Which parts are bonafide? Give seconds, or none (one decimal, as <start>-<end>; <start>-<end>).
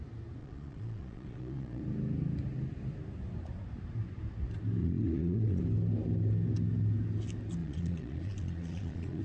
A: 0.0-0.4; 1.8-4.8; 5.6-7.6